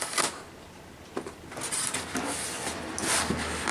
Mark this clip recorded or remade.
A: recorded